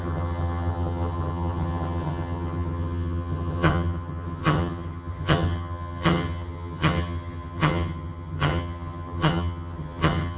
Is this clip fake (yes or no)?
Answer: yes